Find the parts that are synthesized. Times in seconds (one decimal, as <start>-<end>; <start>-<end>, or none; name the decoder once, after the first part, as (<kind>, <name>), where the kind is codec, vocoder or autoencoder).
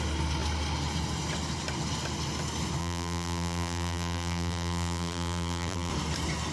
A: 2.8-5.9 (vocoder, BigVGAN v2)